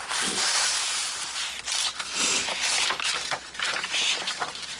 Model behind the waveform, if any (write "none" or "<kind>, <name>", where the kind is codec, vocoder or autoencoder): none